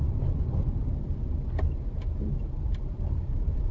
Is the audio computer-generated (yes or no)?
yes